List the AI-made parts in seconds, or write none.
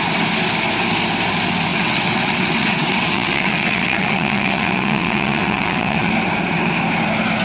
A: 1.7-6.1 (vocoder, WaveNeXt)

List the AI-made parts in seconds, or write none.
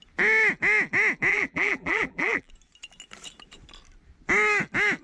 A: 1.3-2.5 (vocoder, BigVGAN v2)